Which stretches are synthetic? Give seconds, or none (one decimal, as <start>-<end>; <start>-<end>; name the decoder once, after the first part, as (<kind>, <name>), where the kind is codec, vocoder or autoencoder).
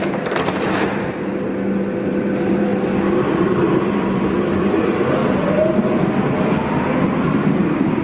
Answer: 0.0-1.3 (vocoder, BigVGAN v2); 2.1-2.7; 3.4-5.2; 6.2-8.0